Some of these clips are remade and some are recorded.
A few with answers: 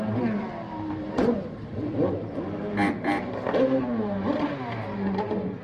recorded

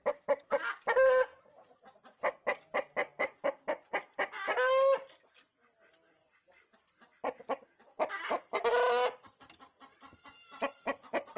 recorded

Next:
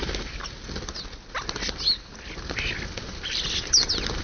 recorded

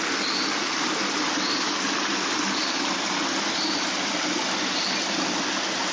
recorded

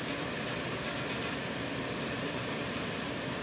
recorded